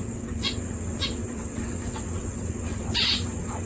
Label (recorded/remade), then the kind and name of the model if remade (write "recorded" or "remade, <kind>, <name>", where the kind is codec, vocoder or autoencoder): remade, vocoder, WaveNeXt